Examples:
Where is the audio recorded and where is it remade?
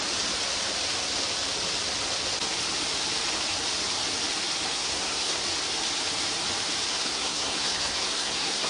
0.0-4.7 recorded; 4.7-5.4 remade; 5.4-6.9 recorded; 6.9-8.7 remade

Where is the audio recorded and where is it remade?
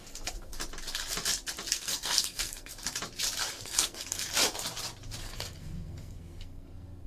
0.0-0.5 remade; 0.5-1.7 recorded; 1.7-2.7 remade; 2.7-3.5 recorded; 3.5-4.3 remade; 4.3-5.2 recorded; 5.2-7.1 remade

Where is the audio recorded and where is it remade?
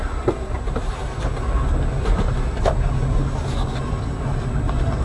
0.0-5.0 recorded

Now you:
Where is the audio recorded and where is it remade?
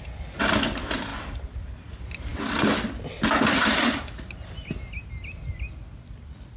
0.0-6.6 recorded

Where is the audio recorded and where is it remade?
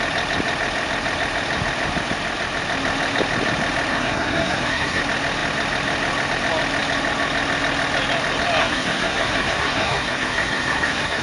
0.0-3.9 recorded; 3.9-5.0 remade; 5.0-8.6 recorded; 8.6-11.2 remade